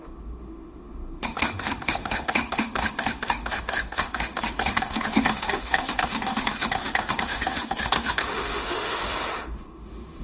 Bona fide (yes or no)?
no